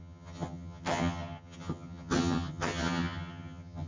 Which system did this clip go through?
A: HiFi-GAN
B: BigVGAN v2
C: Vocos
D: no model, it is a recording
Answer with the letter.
A